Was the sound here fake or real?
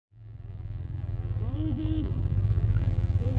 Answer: fake